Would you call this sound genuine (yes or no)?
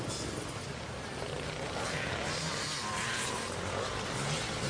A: yes